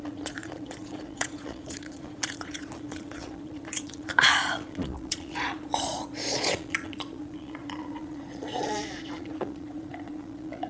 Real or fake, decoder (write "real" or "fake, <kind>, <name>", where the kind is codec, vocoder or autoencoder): fake, vocoder, Vocos